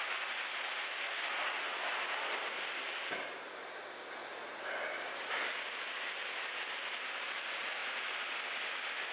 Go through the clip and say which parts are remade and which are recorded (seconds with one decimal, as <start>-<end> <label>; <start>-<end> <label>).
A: 0.0-9.1 recorded